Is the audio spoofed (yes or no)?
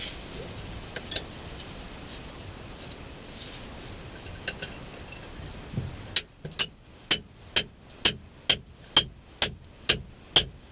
no